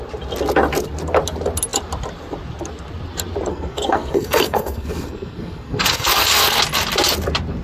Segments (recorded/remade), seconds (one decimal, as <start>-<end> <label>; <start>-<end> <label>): 0.0-3.5 recorded; 3.5-6.6 remade; 6.6-7.6 recorded